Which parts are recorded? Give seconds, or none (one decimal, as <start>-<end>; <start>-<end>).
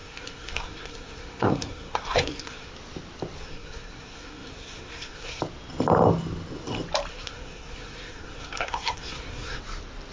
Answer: 2.7-3.4; 5.4-7.1; 9.6-10.1